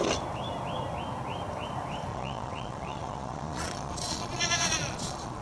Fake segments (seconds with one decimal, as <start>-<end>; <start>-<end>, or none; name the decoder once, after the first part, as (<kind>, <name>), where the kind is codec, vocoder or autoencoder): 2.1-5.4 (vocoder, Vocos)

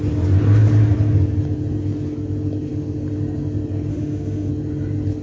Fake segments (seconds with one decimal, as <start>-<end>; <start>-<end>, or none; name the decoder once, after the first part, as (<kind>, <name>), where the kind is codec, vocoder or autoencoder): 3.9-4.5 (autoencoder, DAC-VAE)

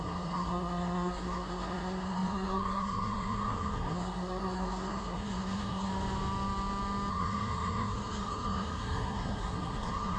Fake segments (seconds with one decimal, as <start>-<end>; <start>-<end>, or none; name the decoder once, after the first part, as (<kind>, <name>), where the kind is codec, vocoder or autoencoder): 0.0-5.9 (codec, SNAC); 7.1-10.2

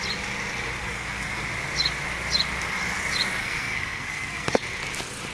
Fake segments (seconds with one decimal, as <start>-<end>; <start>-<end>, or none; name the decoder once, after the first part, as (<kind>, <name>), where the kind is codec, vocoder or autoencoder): 0.8-1.4 (codec, SNAC); 3.4-4.6

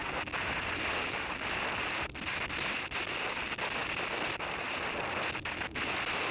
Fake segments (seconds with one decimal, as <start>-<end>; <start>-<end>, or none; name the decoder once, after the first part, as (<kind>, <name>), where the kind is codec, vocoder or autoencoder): none